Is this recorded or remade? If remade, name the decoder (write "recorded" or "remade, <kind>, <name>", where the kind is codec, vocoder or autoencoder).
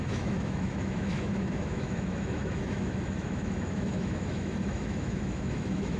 remade, autoencoder, DAC-VAE